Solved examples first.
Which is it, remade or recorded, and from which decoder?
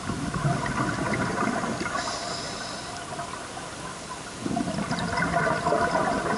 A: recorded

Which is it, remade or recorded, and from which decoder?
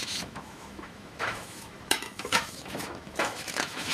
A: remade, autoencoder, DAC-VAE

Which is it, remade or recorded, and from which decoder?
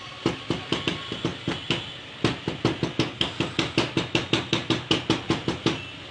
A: recorded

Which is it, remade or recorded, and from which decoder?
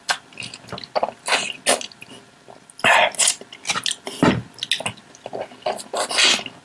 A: recorded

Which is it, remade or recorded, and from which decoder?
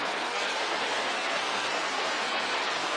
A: remade, codec, SNAC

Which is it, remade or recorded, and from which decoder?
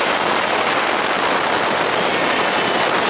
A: recorded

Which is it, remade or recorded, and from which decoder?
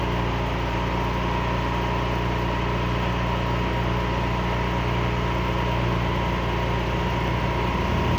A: recorded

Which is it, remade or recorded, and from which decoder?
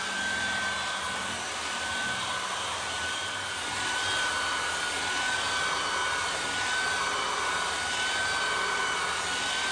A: recorded